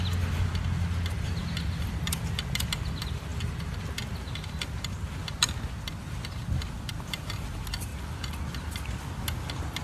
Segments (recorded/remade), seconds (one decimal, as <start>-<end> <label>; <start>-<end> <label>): 0.0-9.8 recorded